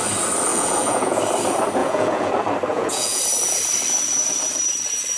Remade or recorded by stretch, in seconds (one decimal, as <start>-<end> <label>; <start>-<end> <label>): 0.0-0.5 recorded; 0.5-1.2 remade; 1.2-1.8 recorded; 1.8-2.3 remade; 2.3-2.7 recorded; 2.7-3.2 remade; 3.2-5.2 recorded